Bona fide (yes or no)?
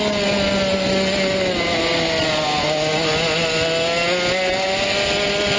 yes